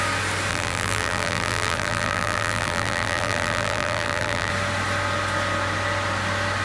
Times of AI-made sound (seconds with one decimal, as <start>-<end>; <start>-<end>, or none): 0.5-4.5